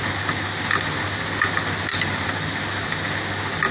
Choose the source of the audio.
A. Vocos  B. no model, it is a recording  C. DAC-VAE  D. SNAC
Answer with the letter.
B